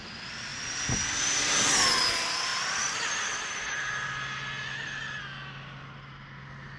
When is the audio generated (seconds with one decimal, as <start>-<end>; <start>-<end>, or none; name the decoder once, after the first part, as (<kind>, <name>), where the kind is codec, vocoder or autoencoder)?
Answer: none